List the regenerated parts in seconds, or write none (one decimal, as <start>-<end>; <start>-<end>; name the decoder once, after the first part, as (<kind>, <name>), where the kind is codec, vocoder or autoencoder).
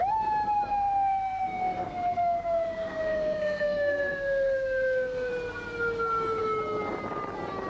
0.7-5.3 (codec, SNAC)